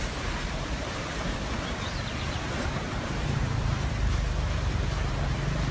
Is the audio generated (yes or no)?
yes